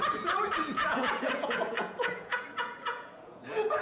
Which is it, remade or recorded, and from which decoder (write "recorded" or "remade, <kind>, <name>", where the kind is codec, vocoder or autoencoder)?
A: remade, vocoder, Vocos